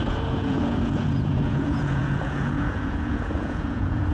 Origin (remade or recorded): remade